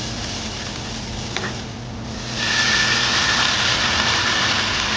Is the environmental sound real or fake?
real